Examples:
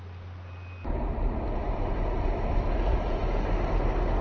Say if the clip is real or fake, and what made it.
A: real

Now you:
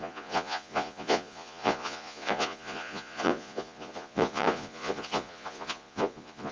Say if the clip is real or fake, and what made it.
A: fake, vocoder, Vocos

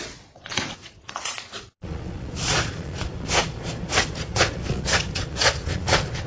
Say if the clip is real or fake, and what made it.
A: fake, vocoder, Vocos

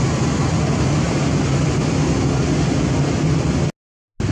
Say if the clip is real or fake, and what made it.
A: real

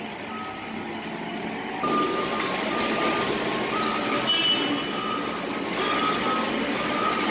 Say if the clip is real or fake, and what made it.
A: real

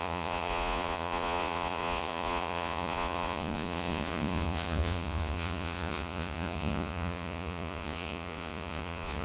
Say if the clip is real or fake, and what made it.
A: fake, vocoder, Vocos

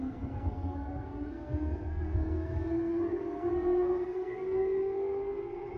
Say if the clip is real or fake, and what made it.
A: fake, codec, SNAC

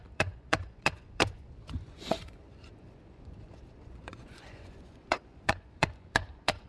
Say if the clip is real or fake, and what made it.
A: fake, vocoder, Vocos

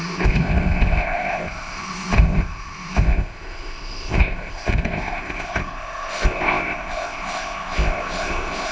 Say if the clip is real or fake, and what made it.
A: fake, codec, ZipCodec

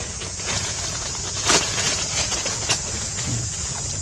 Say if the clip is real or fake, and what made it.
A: fake, vocoder, Vocos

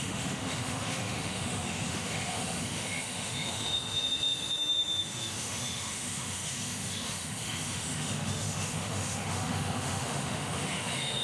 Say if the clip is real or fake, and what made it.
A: fake, autoencoder, DAC-VAE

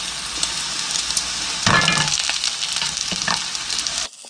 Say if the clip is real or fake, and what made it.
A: real